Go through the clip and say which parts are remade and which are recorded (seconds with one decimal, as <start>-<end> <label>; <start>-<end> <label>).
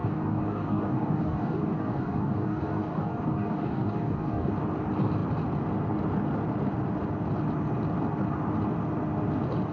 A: 0.0-4.5 remade; 4.5-9.7 recorded